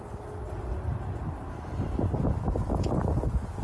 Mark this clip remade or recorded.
recorded